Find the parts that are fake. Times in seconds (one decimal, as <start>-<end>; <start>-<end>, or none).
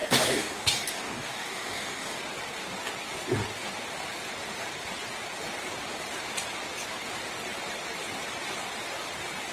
0.0-2.2